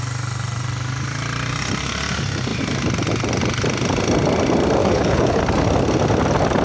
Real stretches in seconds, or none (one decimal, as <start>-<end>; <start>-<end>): 0.0-4.8; 5.4-6.6